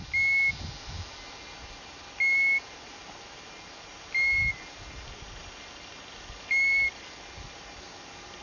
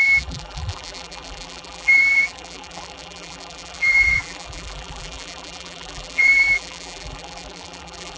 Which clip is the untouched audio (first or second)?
first